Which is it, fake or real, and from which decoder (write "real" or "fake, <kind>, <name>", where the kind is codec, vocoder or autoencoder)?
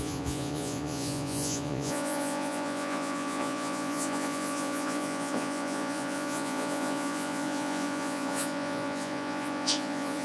fake, vocoder, Vocos